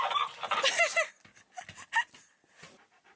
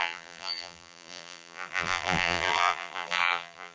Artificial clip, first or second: second